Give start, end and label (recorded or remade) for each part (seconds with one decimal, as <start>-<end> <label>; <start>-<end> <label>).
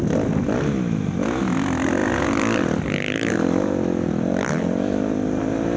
0.0-2.0 recorded; 2.0-5.8 remade